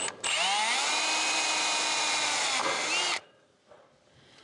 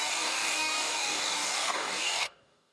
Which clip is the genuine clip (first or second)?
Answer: first